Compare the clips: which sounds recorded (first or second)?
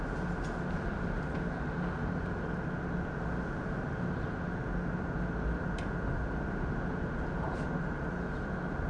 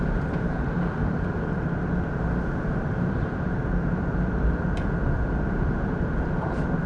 first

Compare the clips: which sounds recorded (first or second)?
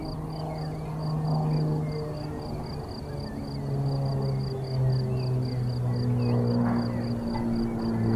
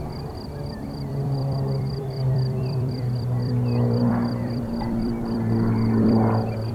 first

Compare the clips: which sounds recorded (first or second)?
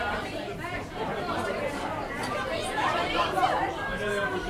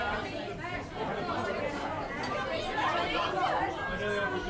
second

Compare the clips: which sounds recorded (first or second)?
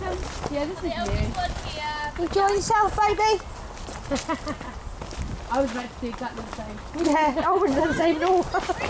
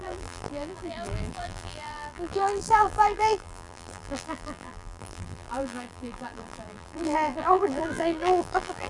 first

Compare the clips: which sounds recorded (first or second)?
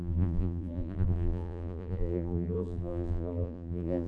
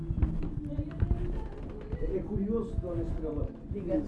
second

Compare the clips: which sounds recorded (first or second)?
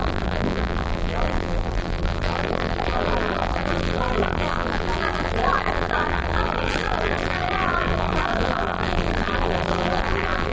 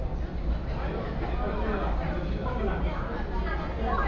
second